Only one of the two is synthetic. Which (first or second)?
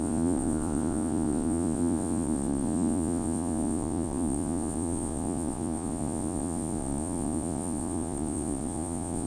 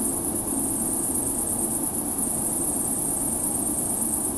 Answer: first